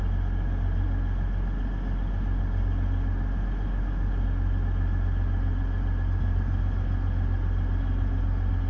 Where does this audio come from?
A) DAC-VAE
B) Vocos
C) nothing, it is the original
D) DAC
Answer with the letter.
C